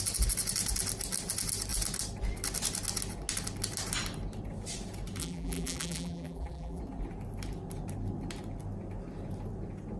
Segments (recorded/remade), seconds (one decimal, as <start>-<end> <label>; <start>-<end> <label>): 0.0-5.2 recorded; 5.2-6.8 remade; 6.8-10.0 recorded